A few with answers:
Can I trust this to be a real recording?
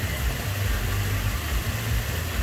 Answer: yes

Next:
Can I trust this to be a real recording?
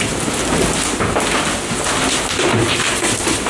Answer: yes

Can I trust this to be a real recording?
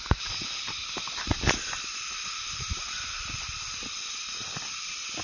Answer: yes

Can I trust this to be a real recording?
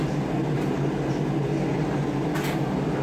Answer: yes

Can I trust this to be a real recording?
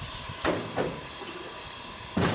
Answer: no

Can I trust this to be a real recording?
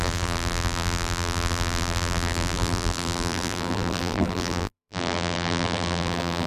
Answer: no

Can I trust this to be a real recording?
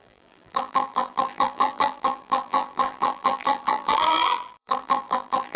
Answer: no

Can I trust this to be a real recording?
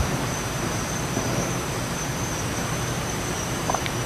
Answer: no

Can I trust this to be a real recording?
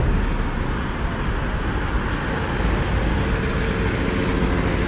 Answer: yes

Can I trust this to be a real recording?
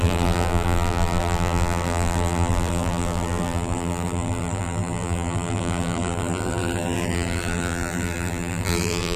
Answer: no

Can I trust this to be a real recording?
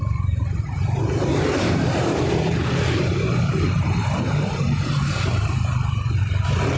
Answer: no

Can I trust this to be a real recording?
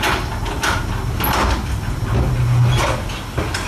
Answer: yes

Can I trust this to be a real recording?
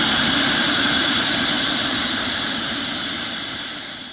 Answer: no